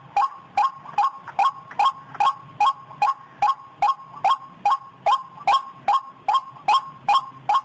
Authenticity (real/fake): real